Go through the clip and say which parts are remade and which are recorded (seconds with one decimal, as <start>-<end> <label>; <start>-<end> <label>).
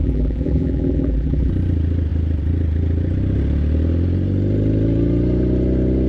0.0-1.5 remade; 1.5-6.1 recorded